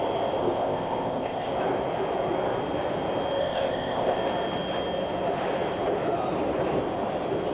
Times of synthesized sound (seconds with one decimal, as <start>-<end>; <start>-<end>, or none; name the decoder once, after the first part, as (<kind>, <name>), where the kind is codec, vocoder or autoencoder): 0.4-1.5 (codec, ZipCodec); 3.4-4.2